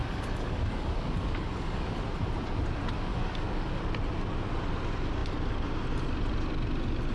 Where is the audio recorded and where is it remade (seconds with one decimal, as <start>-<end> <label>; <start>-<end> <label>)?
0.0-2.0 remade; 2.0-3.1 recorded; 3.1-3.8 remade; 3.8-7.1 recorded